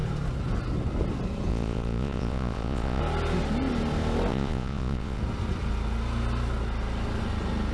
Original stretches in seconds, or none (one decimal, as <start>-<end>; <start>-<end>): 0.0-1.5; 3.0-4.3; 5.2-7.7